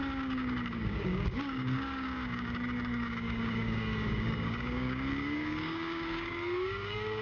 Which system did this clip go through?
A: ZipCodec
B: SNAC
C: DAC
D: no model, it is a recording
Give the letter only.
C